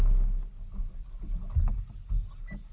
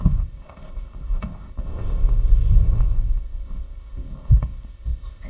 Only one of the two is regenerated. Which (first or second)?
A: second